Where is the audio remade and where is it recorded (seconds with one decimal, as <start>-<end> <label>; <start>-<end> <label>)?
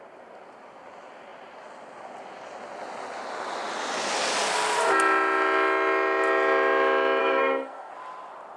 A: 0.0-7.2 recorded; 7.2-7.9 remade; 7.9-8.6 recorded